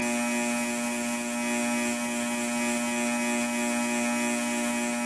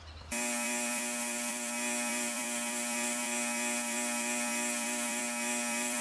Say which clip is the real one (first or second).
first